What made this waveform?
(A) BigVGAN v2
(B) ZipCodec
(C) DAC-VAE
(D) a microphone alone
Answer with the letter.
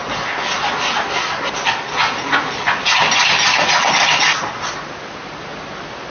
D